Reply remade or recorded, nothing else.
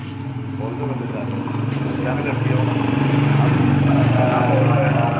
recorded